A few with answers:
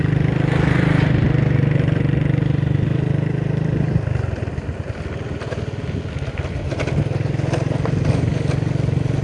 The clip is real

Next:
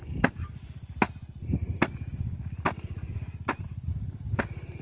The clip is real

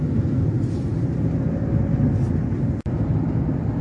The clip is real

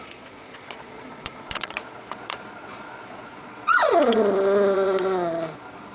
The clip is fake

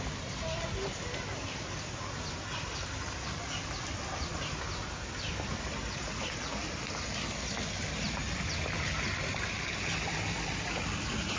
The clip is real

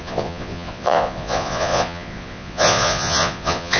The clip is fake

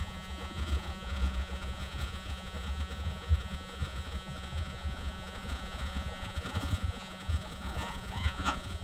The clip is fake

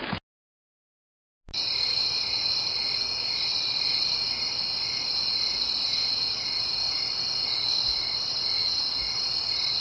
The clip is real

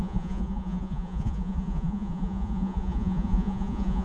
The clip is fake